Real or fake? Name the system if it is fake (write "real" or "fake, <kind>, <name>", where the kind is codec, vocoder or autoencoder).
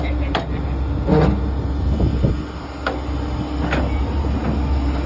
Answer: real